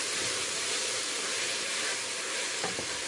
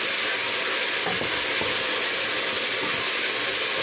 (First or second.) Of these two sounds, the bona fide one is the second